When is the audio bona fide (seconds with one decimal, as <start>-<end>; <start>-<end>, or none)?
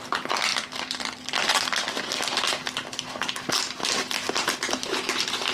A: 0.0-5.5